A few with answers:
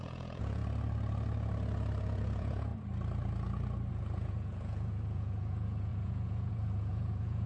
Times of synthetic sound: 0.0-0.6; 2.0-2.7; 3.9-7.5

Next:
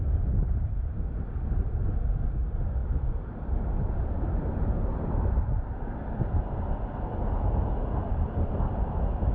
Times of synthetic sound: none

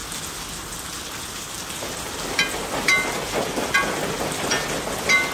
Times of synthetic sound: none

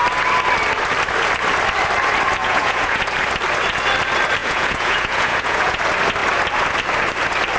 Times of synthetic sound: 2.4-3.0; 4.4-5.8